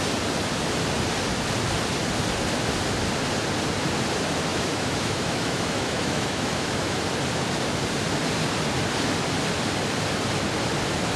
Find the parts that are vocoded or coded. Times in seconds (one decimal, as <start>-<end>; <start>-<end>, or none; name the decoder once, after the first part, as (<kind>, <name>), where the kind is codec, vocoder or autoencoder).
4.5-7.0 (autoencoder, DAC-VAE)